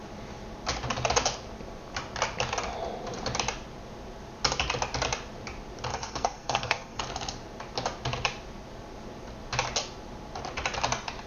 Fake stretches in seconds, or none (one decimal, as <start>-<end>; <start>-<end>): 5.9-7.0